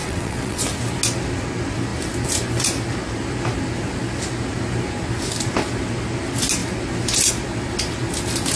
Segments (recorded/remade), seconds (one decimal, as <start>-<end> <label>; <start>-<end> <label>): 0.0-0.6 remade; 0.6-8.6 recorded